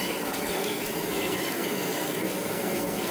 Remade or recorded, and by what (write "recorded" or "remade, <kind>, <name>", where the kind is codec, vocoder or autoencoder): remade, codec, SNAC